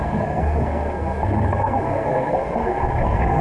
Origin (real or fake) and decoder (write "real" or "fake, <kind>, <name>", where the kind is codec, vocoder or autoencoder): fake, codec, SNAC